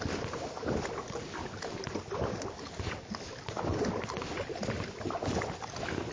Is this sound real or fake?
real